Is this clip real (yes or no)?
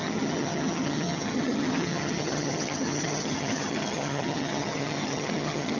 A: no